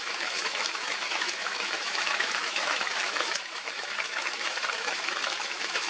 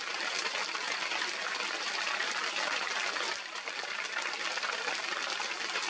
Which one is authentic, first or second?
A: second